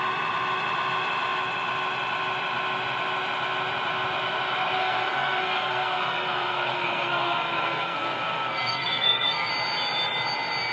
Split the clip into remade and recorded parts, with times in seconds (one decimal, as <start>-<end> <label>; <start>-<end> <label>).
0.0-4.8 recorded; 4.8-9.5 remade; 9.5-10.7 recorded